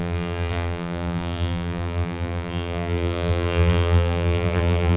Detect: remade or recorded remade